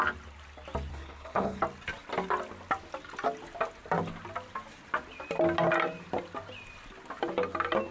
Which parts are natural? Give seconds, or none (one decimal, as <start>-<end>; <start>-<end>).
0.0-0.9; 1.6-7.9